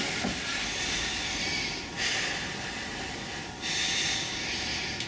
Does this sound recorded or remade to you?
recorded